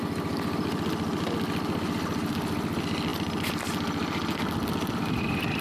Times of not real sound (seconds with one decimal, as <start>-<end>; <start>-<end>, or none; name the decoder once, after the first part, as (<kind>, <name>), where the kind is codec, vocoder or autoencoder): none